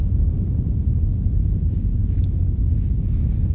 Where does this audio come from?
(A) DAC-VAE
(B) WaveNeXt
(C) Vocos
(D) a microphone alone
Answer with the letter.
D